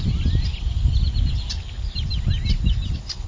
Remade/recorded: recorded